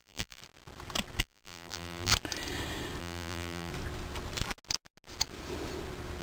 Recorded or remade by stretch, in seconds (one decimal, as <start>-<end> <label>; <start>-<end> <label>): 0.0-0.4 remade; 0.4-1.2 recorded; 1.2-2.1 remade; 2.1-3.0 recorded; 3.0-3.7 remade; 3.7-6.2 recorded